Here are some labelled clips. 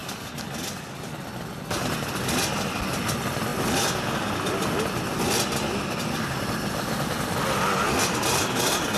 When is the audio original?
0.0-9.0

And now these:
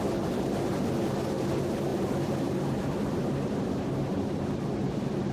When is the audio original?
0.0-5.3

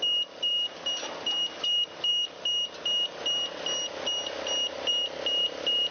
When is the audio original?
0.0-5.9

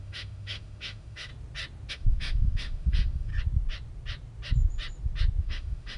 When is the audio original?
1.3-1.9; 3.3-5.4

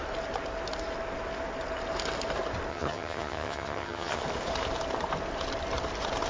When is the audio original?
0.0-2.7; 4.2-6.3

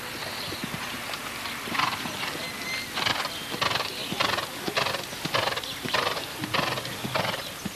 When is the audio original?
0.0-7.8